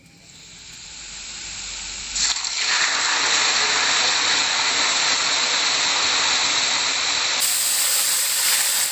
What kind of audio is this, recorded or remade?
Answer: recorded